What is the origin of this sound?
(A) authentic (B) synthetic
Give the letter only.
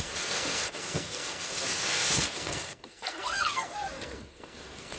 B